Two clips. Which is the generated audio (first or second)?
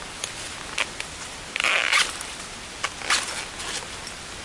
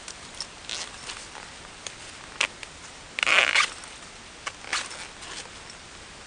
first